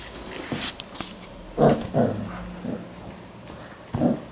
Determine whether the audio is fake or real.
real